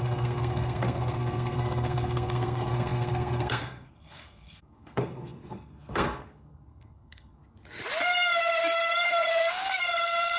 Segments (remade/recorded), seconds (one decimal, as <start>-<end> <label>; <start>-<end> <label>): 0.0-7.4 remade; 7.4-9.3 recorded; 9.3-10.4 remade